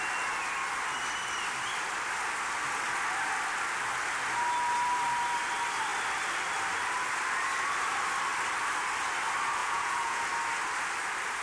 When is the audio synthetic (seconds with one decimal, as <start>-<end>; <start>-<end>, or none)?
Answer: 9.6-10.2